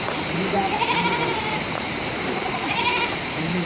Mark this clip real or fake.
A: fake